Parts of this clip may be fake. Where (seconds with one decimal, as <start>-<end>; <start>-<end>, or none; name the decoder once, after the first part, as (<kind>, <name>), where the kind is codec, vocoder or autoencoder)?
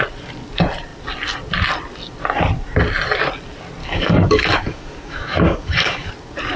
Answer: 3.8-6.1 (codec, DAC)